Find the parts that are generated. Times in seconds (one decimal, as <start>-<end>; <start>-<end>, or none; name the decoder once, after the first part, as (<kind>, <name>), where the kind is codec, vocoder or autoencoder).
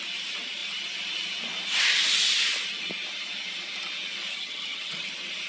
4.3-5.1 (vocoder, HiFi-GAN)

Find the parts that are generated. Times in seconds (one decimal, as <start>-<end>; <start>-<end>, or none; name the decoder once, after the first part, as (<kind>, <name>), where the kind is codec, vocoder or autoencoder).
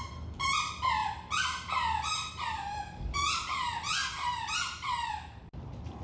none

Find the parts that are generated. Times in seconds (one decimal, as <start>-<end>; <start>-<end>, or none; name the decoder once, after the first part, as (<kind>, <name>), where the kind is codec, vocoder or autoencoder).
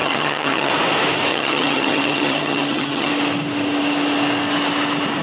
0.0-0.7 (vocoder, HiFi-GAN); 1.3-3.1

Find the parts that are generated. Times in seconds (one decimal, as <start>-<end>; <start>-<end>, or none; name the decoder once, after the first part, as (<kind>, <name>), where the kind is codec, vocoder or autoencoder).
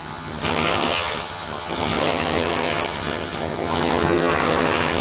0.0-5.0 (vocoder, HiFi-GAN)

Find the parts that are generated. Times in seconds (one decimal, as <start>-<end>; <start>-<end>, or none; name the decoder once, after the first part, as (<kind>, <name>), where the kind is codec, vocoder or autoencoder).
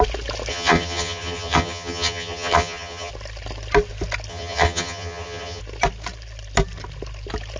0.5-3.1 (vocoder, HiFi-GAN); 4.3-5.6